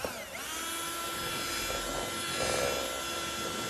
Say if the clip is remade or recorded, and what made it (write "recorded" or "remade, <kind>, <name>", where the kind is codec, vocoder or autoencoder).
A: recorded